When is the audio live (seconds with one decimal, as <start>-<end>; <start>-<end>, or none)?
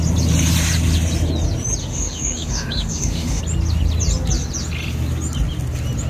0.0-1.8; 3.4-6.1